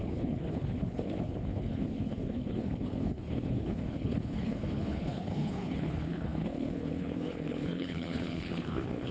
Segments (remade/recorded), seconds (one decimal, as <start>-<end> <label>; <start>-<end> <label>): 0.0-9.1 remade